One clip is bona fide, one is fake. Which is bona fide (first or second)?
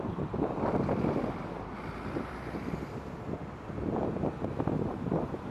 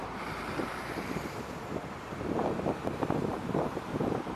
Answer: first